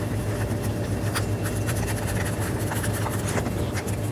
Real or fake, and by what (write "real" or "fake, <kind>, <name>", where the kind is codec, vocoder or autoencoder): real